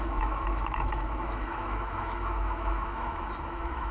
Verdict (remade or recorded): remade